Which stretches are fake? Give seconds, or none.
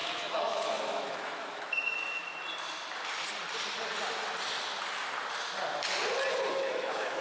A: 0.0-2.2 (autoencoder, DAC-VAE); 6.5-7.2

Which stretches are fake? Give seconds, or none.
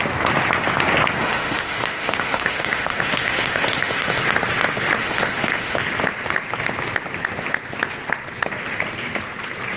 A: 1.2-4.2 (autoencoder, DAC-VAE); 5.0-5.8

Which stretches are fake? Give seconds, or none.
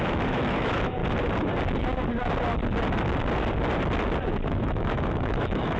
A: 0.0-1.0 (autoencoder, DAC-VAE); 4.5-5.8